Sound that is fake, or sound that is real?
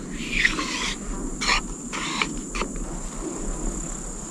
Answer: real